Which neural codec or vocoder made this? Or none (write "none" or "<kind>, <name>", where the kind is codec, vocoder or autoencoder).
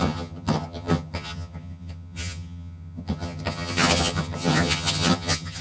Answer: vocoder, HiFi-GAN